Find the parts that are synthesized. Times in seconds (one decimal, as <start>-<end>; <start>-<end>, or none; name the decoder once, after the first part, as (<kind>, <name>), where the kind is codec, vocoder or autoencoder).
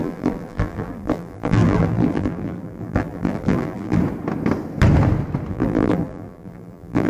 0.0-4.0 (vocoder, BigVGAN v2); 5.5-7.1